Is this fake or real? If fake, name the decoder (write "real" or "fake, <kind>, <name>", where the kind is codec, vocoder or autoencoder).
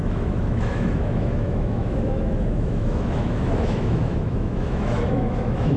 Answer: fake, autoencoder, DAC-VAE